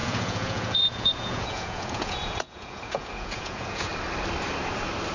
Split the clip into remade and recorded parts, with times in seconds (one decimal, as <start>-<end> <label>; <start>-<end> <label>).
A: 0.0-3.9 remade; 3.9-5.1 recorded